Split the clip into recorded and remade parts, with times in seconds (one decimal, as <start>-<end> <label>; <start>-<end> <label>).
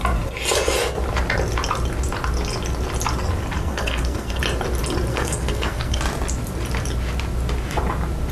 0.0-3.6 recorded; 3.6-4.4 remade; 4.4-5.1 recorded; 5.1-6.0 remade; 6.0-8.3 recorded